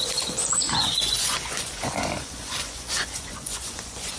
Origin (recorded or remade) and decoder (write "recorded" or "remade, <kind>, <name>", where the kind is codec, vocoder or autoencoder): remade, vocoder, Vocos